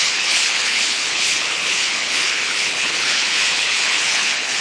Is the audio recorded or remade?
remade